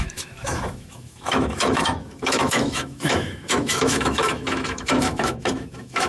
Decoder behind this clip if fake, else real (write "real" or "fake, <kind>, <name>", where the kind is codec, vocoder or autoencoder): fake, autoencoder, DAC-VAE